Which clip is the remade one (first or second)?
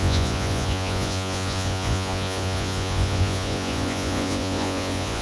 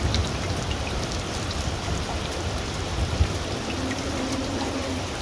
first